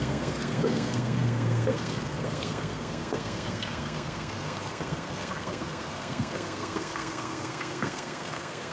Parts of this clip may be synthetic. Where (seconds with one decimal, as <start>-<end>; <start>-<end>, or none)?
0.0-8.7